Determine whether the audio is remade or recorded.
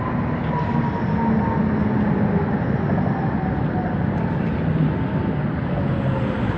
recorded